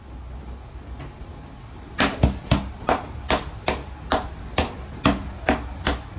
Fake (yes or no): no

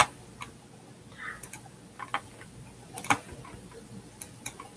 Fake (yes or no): no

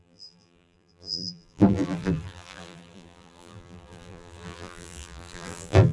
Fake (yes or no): yes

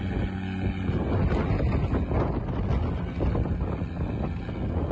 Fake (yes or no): no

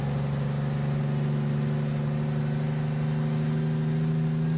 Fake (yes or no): no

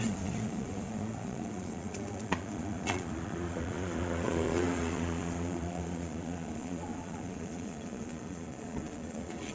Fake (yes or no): yes